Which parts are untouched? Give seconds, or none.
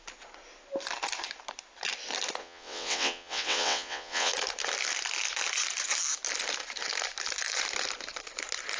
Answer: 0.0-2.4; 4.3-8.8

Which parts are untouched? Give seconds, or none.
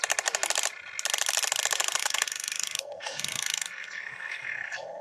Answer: 0.0-2.0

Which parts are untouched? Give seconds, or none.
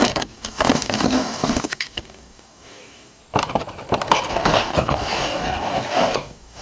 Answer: 3.2-4.3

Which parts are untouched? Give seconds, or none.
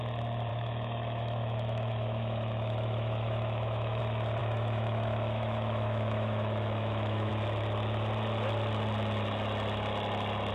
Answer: 0.0-0.5; 4.0-4.4; 7.3-10.5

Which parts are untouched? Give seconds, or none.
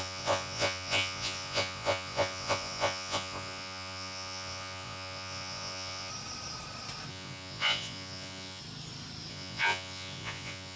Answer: 6.1-7.1; 8.6-9.3